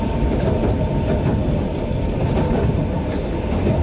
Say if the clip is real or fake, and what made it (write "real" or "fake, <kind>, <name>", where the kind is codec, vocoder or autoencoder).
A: real